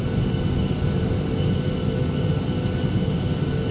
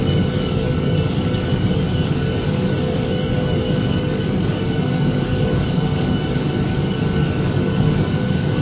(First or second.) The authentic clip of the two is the first